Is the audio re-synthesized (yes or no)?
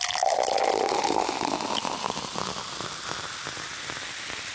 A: no